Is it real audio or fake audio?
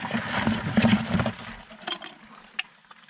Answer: fake